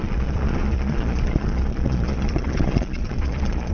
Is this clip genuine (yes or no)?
no